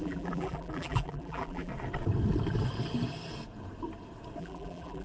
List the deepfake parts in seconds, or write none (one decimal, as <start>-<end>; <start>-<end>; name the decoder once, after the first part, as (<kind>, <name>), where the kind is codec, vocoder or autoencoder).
0.0-1.7 (vocoder, BigVGAN v2); 4.4-5.0